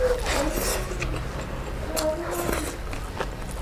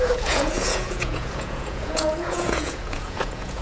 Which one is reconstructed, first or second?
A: second